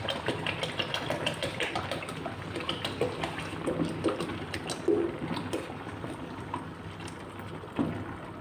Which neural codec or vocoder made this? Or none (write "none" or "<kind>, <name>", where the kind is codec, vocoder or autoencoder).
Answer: none